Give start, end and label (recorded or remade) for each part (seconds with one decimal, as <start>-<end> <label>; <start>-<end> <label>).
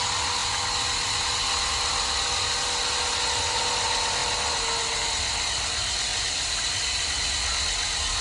0.0-8.2 recorded